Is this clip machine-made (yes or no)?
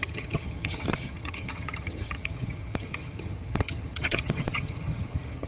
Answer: yes